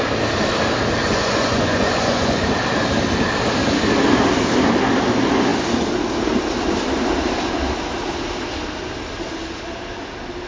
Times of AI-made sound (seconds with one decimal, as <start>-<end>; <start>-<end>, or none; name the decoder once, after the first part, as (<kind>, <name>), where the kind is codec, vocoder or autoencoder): 1.0-2.4 (vocoder, Vocos)